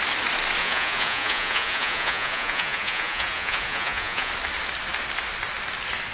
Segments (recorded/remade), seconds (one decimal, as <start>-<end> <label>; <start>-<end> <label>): 0.0-0.6 recorded; 0.6-4.3 remade; 4.3-6.1 recorded